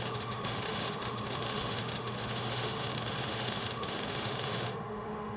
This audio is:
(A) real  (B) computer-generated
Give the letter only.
B